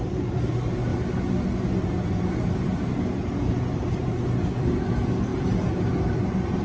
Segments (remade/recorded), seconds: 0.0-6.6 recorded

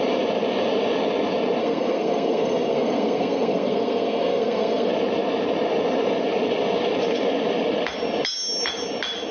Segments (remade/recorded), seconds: 0.0-1.6 recorded; 1.6-4.9 remade; 4.9-9.3 recorded

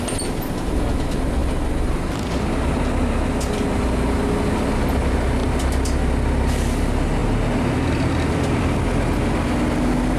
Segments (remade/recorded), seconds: 0.0-10.2 recorded

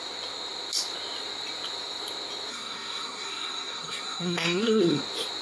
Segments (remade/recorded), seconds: 0.0-2.5 recorded; 2.5-5.0 remade; 5.0-5.4 recorded

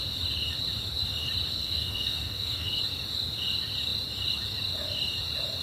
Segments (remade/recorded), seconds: 0.0-1.5 recorded; 1.5-2.8 remade; 2.8-5.6 recorded